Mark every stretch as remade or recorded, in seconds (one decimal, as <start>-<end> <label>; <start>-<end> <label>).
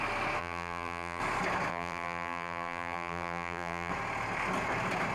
0.0-0.4 recorded; 0.4-1.2 remade; 1.2-1.7 recorded; 1.7-3.9 remade; 3.9-5.1 recorded